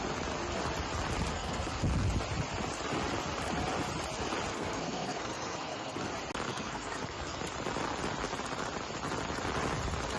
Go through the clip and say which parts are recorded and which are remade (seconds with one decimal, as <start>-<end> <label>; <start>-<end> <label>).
0.0-1.3 recorded; 1.3-1.8 remade; 1.8-4.5 recorded; 4.5-6.1 remade; 6.1-6.5 recorded; 6.5-7.4 remade; 7.4-10.2 recorded